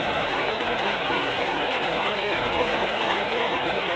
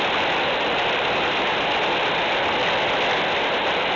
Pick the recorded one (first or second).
second